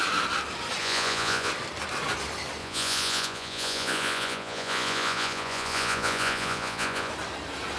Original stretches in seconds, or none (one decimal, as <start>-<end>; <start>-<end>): 0.0-0.8; 1.5-2.6; 7.1-7.8